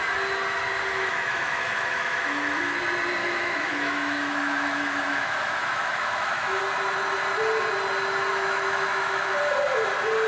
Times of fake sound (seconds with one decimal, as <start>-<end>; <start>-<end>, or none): 0.9-2.8; 3.2-6.6; 8.3-9.4